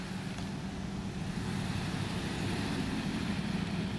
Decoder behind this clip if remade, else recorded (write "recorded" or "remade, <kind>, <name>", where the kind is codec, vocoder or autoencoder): recorded